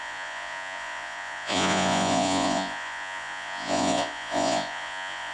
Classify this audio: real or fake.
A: fake